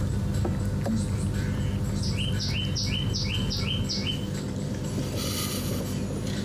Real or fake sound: real